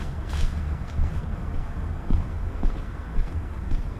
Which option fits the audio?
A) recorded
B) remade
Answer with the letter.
B